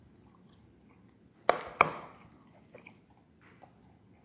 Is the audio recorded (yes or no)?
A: yes